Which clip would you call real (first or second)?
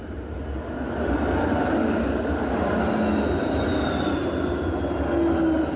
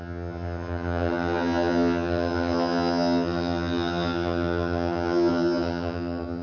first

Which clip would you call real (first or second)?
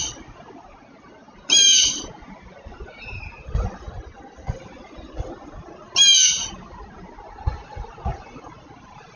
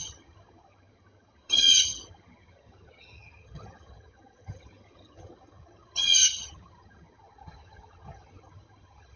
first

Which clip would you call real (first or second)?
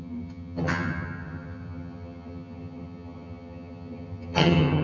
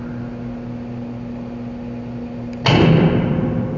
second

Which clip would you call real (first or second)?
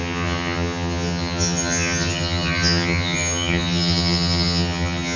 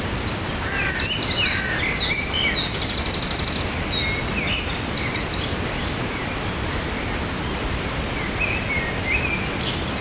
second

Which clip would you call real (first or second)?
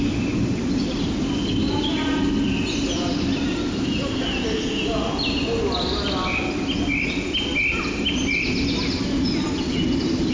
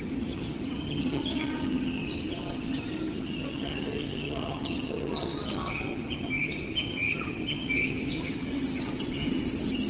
first